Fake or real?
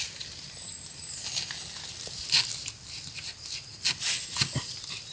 real